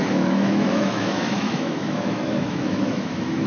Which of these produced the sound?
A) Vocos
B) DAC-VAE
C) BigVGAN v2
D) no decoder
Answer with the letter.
B